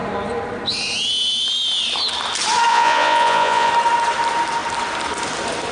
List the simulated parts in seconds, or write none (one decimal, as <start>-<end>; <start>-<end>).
2.7-3.7